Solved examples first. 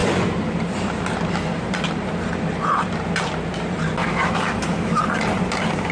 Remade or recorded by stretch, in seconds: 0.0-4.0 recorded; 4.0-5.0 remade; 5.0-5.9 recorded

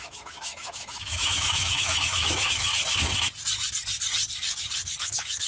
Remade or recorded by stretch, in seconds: 0.0-2.7 remade; 2.7-5.0 recorded; 5.0-5.5 remade

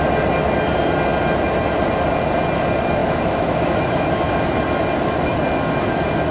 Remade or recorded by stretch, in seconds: 0.0-3.0 recorded; 3.0-4.1 remade; 4.1-6.3 recorded

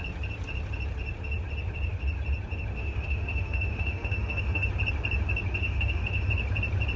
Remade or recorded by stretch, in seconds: 0.0-2.8 recorded; 2.8-4.7 remade; 4.7-5.6 recorded; 5.6-6.3 remade; 6.3-7.0 recorded